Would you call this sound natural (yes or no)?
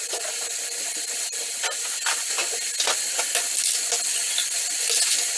yes